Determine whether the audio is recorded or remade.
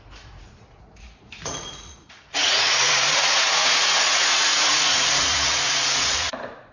remade